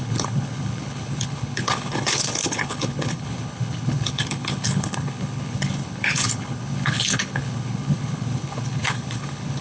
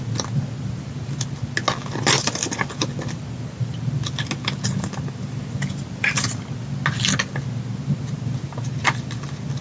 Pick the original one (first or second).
second